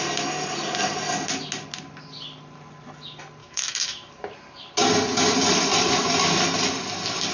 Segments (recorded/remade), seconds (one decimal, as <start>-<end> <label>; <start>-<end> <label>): 0.0-3.4 recorded; 3.4-4.1 remade; 4.1-7.3 recorded